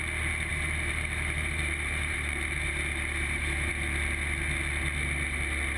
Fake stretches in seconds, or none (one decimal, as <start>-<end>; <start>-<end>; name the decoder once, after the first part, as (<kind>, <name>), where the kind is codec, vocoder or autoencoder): 0.5-3.7 (vocoder, BigVGAN v2)